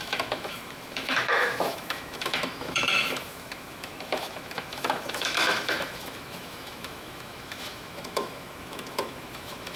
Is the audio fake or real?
fake